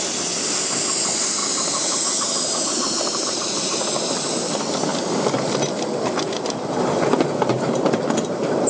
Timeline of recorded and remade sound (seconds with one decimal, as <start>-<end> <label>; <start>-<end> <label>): 0.0-1.4 recorded; 1.4-3.8 remade; 3.8-8.7 recorded